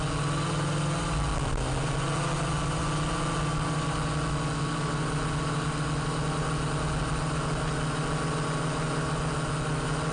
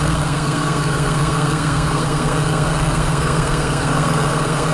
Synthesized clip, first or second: second